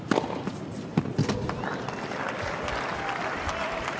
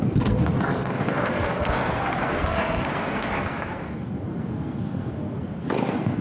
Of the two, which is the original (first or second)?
first